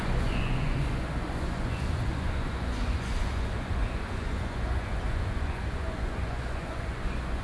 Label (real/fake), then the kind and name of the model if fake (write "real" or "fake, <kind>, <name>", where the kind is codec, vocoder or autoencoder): fake, vocoder, Vocos